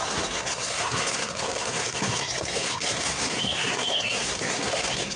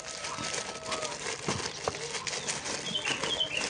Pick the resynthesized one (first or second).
first